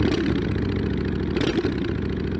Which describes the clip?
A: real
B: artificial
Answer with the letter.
B